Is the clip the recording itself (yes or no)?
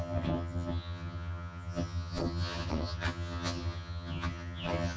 no